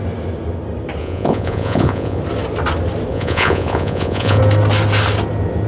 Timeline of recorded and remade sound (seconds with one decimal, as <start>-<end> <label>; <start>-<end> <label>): 0.0-1.0 recorded; 1.0-2.2 remade; 2.2-3.1 recorded; 3.1-4.4 remade; 4.4-5.7 recorded